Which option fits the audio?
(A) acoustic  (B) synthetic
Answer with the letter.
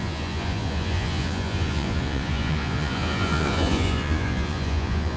B